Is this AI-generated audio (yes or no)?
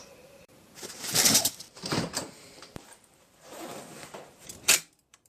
yes